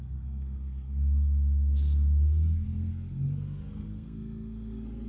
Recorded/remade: remade